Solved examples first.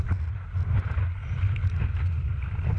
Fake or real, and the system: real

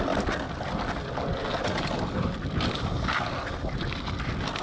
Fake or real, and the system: real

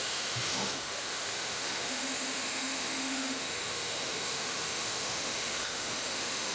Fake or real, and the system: fake, autoencoder, DAC-VAE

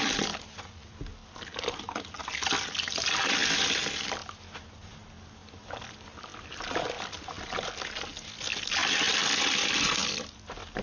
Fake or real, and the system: real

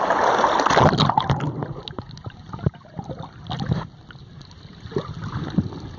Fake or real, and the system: real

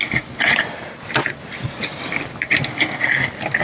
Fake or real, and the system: real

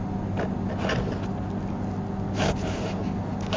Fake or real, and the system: real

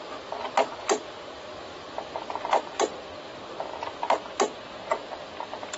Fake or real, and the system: real